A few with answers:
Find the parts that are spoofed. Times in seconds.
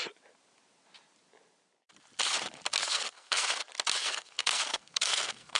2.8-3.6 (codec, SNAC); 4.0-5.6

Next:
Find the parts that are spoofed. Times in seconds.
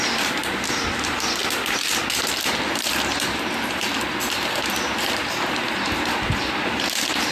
none